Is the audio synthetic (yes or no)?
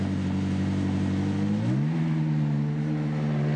no